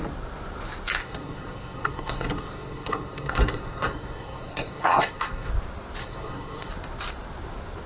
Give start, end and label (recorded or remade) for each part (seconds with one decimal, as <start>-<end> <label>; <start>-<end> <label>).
0.0-1.0 recorded; 1.0-5.5 remade; 5.5-6.0 recorded; 6.0-6.7 remade; 6.7-7.9 recorded

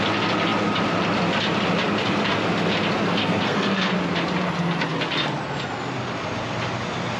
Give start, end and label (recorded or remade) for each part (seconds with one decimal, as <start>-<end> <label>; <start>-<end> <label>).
0.0-3.2 recorded; 3.2-3.9 remade; 3.9-7.2 recorded

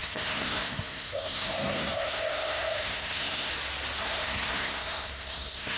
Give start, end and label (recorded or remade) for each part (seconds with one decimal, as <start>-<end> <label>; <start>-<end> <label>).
0.0-3.5 remade; 3.5-4.0 recorded; 4.0-5.8 remade

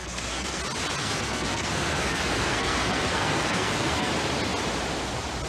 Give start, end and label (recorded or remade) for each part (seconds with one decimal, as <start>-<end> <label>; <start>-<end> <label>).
0.0-0.6 remade; 0.6-1.0 recorded; 1.0-4.1 remade; 4.1-5.5 recorded